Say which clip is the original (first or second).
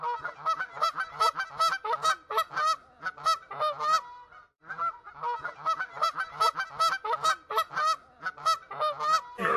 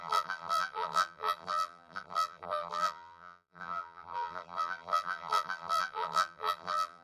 first